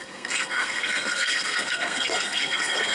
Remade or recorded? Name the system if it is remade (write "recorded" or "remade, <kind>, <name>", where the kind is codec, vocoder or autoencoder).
remade, codec, SNAC